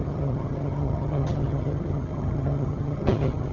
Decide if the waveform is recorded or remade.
remade